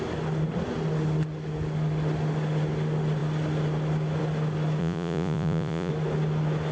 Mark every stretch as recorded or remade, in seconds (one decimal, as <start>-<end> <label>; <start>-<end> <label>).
0.0-4.8 recorded; 4.8-5.9 remade; 5.9-6.7 recorded